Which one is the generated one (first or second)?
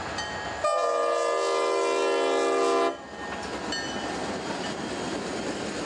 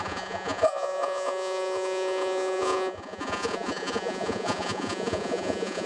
second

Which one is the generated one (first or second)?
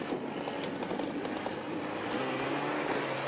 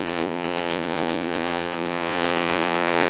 second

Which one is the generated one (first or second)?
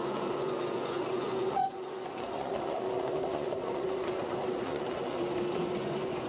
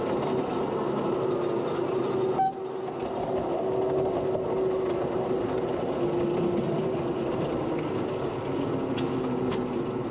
first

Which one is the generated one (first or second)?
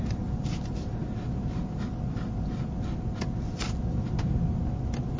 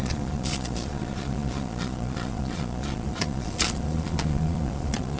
second